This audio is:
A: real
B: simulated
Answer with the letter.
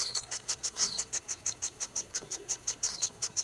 B